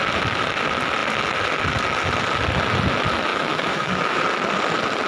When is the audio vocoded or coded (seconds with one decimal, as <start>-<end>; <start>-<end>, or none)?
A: 3.3-4.2